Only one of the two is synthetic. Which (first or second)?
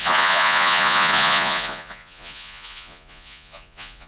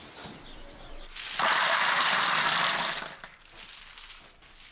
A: first